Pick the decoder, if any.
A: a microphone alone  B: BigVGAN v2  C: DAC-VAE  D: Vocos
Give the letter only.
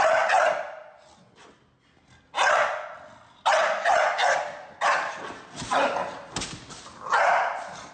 A